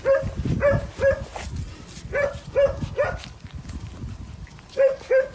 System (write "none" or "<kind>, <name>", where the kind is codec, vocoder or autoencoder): none